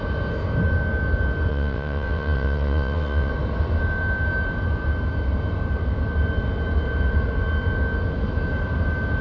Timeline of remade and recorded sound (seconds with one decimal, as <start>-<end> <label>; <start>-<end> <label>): 0.0-1.5 recorded; 1.5-3.3 remade; 3.3-9.2 recorded